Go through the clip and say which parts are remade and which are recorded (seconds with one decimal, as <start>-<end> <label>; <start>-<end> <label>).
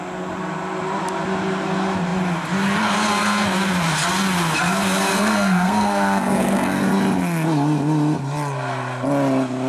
0.0-5.1 recorded; 5.1-6.8 remade; 6.8-9.7 recorded